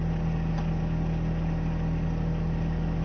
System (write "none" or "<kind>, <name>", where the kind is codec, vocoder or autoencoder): none